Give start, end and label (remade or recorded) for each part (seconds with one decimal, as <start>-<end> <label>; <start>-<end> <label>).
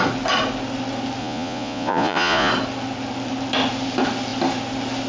0.0-1.2 recorded; 1.2-2.5 remade; 2.5-5.1 recorded